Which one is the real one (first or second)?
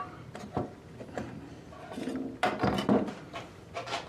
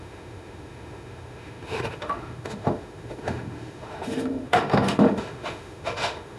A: first